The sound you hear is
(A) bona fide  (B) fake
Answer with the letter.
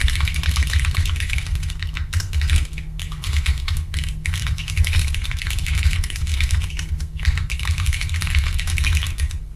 B